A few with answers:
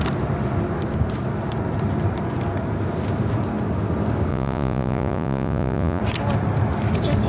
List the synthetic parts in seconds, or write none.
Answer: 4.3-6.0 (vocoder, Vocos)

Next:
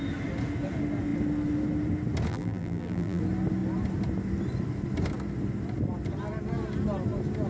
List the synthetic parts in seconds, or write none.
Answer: 2.3-3.2 (vocoder, BigVGAN v2)

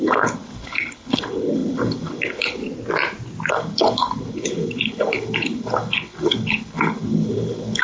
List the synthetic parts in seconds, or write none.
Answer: 0.0-2.6 (codec, HILCodec); 3.5-7.8

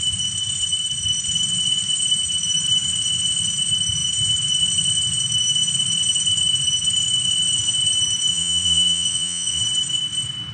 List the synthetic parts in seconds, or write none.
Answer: 8.3-9.6 (vocoder, Vocos)

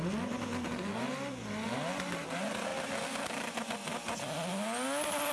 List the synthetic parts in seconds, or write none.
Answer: none

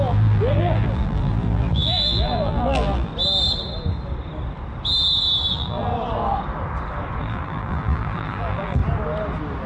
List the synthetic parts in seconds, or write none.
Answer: 0.0-3.1 (vocoder, BigVGAN v2); 5.5-5.9; 7.2-8.8